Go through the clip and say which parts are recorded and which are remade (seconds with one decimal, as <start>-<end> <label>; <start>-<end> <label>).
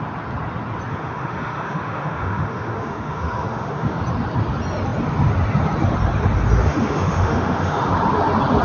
0.0-0.9 recorded; 0.9-4.0 remade; 4.0-6.6 recorded; 6.6-7.9 remade; 7.9-8.6 recorded